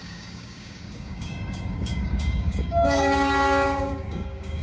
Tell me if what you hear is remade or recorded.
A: remade